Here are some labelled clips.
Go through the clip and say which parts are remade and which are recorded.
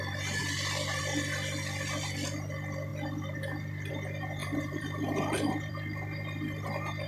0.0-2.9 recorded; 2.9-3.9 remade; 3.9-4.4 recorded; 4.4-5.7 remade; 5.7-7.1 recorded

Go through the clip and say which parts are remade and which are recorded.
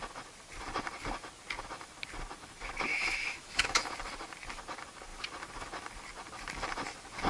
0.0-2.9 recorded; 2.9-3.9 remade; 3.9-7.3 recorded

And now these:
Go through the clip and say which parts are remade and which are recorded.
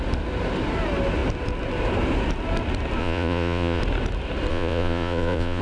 0.0-3.0 recorded; 3.0-3.8 remade; 3.8-4.5 recorded; 4.5-5.6 remade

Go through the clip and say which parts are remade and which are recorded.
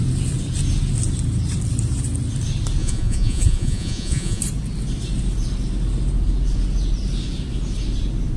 0.0-2.8 recorded; 2.8-4.4 remade; 4.4-8.4 recorded